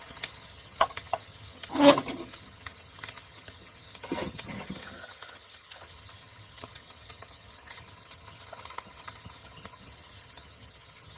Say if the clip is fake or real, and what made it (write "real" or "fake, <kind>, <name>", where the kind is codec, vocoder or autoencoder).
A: fake, vocoder, HiFi-GAN